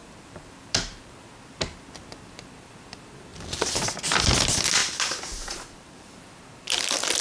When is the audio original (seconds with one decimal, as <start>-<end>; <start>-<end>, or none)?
1.2-3.3; 3.8-4.8; 6.2-7.2